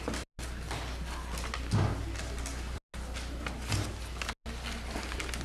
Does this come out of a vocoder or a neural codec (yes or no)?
no